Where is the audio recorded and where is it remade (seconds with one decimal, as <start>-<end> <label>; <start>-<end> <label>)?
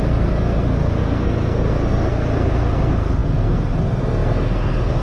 0.0-5.0 remade